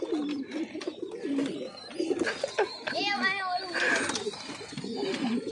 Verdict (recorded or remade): recorded